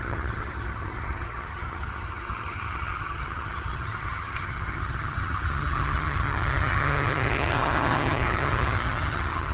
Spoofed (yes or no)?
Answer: yes